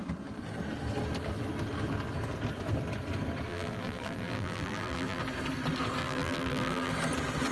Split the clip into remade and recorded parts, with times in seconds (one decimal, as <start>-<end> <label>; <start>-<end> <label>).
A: 0.0-3.5 recorded; 3.5-5.2 remade; 5.2-6.0 recorded; 6.0-6.9 remade; 6.9-7.5 recorded